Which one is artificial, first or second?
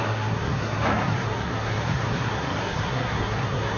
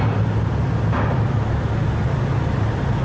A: first